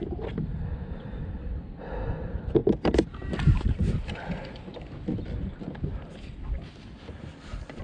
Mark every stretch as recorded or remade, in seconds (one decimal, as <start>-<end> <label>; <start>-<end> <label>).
0.0-2.6 remade; 2.6-7.3 recorded; 7.3-7.8 remade